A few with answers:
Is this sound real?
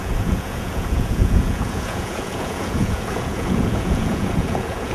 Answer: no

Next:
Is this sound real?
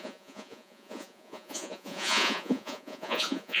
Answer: no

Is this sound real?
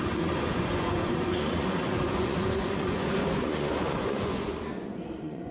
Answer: no